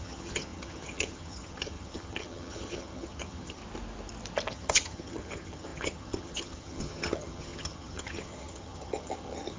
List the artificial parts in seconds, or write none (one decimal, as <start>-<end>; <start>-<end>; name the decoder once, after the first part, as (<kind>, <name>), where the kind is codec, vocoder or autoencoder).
0.0-3.6 (vocoder, HiFi-GAN); 4.5-9.6